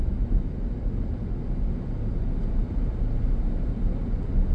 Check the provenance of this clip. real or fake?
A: real